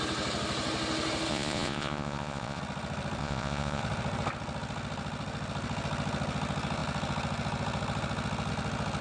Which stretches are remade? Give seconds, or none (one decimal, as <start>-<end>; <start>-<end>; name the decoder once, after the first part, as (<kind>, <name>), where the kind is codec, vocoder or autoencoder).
1.3-2.6 (vocoder, Vocos); 3.2-3.8